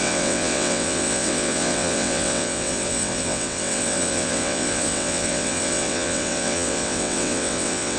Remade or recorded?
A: remade